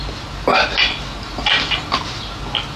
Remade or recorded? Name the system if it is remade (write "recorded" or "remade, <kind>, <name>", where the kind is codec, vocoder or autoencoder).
recorded